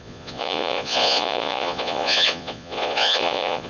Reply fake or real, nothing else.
fake